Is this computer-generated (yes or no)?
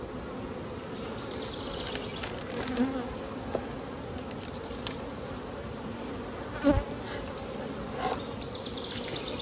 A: no